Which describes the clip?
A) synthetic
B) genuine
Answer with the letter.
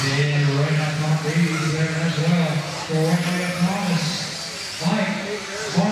B